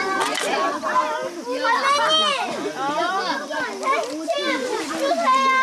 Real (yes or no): yes